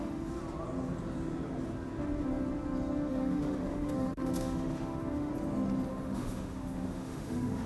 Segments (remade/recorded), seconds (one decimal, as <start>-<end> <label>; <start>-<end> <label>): 0.0-0.4 remade; 0.4-3.1 recorded; 3.1-5.3 remade; 5.3-5.9 recorded; 5.9-7.7 remade